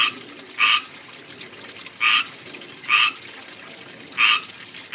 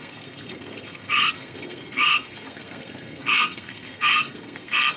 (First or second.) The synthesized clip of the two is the second